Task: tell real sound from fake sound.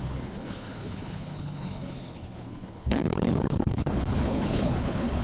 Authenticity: fake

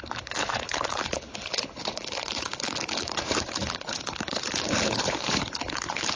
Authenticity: fake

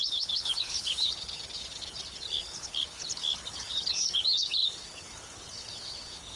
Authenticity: fake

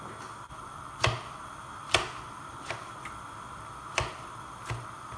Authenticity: real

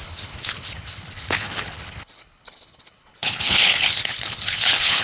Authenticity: fake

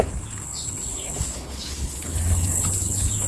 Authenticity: fake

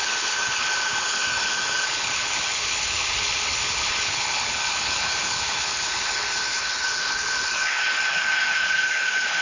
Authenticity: fake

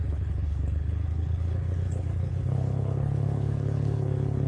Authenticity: fake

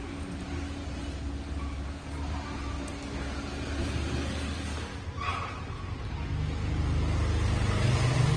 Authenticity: real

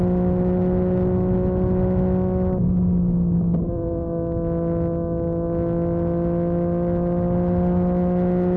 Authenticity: real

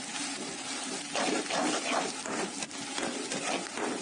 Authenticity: real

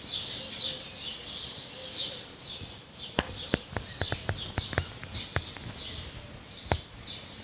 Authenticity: real